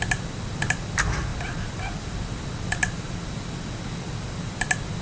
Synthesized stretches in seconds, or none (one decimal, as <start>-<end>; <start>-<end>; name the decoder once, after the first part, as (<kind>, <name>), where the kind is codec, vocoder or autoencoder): none